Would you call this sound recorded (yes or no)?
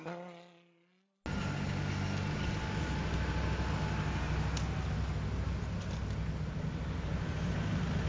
yes